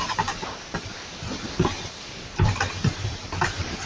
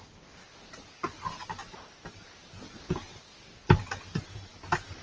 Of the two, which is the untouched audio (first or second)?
second